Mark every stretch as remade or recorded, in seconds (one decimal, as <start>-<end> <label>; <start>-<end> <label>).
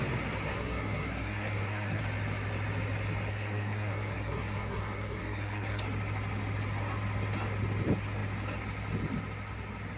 0.0-0.5 recorded; 0.5-2.0 remade; 2.0-3.3 recorded; 3.3-5.8 remade; 5.8-10.0 recorded